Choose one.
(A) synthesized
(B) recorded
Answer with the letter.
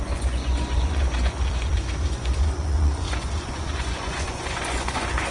A